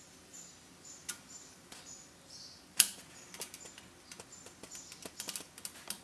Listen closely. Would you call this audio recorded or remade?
recorded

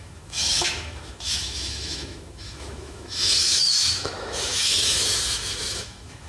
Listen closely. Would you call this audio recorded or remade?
remade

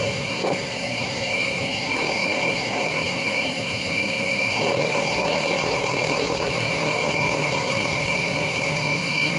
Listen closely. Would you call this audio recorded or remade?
remade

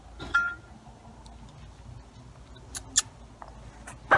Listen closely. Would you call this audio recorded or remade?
recorded